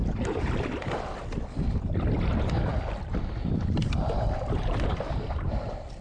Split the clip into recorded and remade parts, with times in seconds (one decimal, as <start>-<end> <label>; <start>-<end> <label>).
0.0-6.0 recorded